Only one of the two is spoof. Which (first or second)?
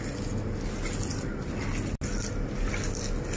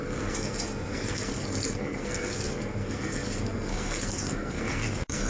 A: second